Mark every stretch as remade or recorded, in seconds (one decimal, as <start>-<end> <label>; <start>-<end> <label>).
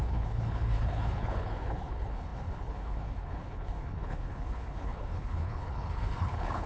0.0-6.7 remade